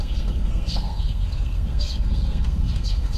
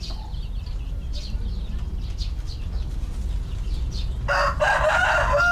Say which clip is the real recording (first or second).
second